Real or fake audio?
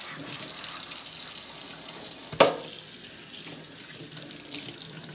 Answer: real